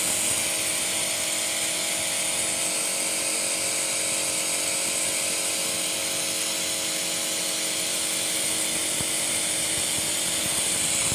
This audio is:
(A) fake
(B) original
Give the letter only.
B